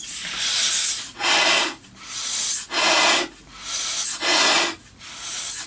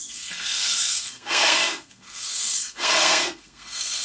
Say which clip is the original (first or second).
first